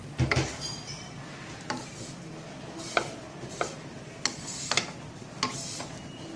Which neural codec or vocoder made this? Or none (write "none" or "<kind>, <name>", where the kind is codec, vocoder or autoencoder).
none